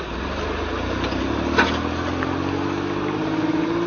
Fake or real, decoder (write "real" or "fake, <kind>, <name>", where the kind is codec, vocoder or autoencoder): real